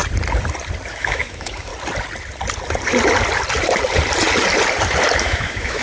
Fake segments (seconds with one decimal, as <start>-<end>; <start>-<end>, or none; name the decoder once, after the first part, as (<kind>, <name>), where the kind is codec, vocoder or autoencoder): 0.9-1.7 (autoencoder, DAC-VAE); 5.2-5.8